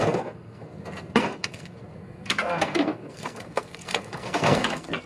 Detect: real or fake fake